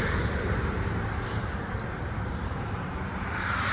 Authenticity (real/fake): fake